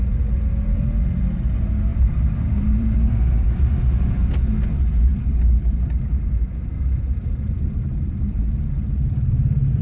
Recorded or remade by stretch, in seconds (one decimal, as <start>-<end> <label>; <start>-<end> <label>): 0.0-1.9 recorded; 1.9-3.8 remade; 3.8-5.1 recorded; 5.1-9.3 remade; 9.3-9.8 recorded